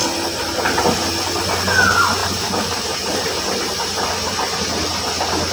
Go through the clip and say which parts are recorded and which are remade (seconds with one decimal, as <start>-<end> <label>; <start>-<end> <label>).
0.0-2.2 recorded; 2.2-4.6 remade; 4.6-5.5 recorded